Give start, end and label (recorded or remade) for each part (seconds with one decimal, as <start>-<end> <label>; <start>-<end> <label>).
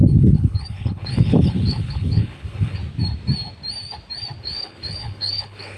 0.0-2.8 remade; 2.8-4.4 recorded; 4.4-5.8 remade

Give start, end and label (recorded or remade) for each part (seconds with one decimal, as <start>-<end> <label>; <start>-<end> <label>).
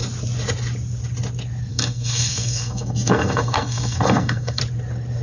0.0-1.7 recorded; 1.7-4.6 remade; 4.6-5.2 recorded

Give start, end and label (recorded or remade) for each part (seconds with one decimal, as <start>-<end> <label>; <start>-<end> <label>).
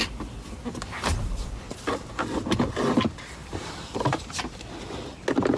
0.0-1.1 recorded; 1.1-2.8 remade; 2.8-3.4 recorded; 3.4-4.4 remade; 4.4-5.6 recorded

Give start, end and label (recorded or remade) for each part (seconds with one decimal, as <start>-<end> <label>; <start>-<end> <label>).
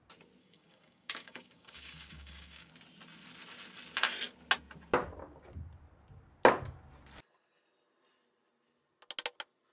0.0-0.4 recorded; 0.4-2.7 remade; 2.7-9.7 recorded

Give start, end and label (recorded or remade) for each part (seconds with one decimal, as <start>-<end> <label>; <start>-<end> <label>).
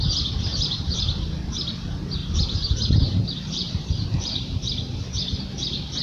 0.0-0.5 recorded; 0.5-1.0 remade; 1.0-2.2 recorded; 2.2-5.4 remade; 5.4-6.0 recorded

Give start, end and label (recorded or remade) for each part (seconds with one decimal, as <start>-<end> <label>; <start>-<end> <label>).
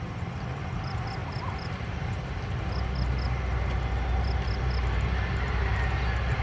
0.0-6.4 recorded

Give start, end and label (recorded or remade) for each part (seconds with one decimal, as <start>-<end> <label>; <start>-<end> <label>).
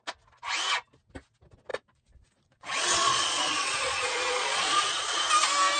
0.0-1.7 recorded; 1.7-5.2 remade; 5.2-5.8 recorded